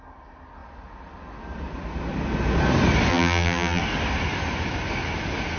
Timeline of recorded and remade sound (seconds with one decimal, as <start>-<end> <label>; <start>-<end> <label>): 0.0-3.1 recorded; 3.1-3.8 remade; 3.8-5.6 recorded